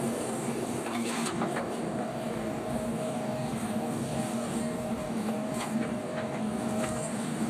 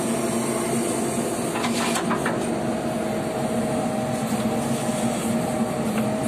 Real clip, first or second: second